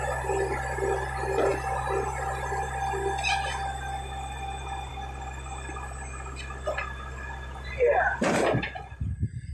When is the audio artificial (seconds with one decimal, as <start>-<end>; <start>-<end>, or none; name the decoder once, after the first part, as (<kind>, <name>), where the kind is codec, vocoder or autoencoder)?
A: none